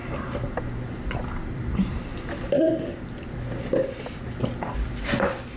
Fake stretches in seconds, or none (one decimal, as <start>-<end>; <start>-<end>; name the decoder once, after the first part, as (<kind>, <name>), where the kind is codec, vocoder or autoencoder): 1.2-2.1 (vocoder, BigVGAN v2)